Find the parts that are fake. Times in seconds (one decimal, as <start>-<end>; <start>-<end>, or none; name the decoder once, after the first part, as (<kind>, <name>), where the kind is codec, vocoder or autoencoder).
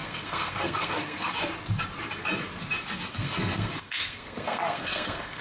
0.0-1.3 (codec, SNAC); 3.1-5.4